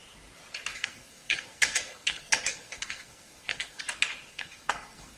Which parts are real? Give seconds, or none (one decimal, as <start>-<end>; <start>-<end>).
0.0-0.7; 3.8-4.3